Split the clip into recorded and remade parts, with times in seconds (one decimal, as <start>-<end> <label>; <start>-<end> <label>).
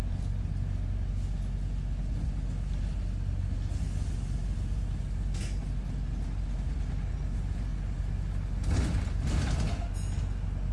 0.0-10.7 recorded